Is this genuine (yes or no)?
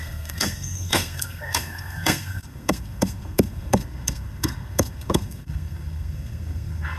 no